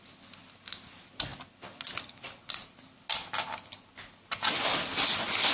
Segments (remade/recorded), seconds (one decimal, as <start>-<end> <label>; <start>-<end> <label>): 0.0-5.5 recorded